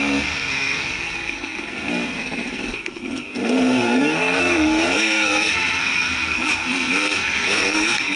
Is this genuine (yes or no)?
no